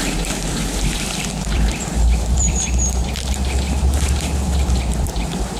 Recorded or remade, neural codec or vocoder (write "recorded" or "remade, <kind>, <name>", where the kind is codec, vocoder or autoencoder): remade, vocoder, BigVGAN v2